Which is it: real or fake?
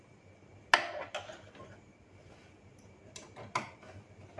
real